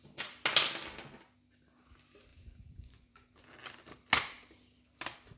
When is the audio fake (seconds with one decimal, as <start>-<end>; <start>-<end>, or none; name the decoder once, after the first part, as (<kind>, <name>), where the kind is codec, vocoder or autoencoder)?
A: 2.3-3.3 (vocoder, Vocos)